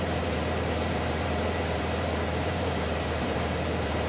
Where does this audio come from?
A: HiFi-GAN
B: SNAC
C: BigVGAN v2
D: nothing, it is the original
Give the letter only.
C